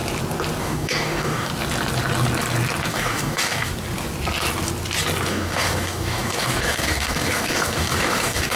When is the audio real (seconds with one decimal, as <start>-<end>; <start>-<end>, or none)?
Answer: 0.0-0.6; 1.5-2.9; 3.7-5.3